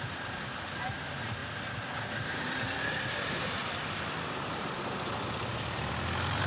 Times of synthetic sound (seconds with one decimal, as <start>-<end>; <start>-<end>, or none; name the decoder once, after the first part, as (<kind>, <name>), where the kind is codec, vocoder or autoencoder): 0.0-1.4 (vocoder, BigVGAN v2); 4.1-6.5